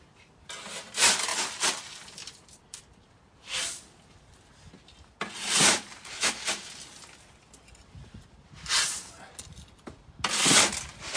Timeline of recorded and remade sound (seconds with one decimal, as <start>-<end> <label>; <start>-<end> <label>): 0.0-1.3 recorded; 1.3-3.4 remade; 3.4-11.2 recorded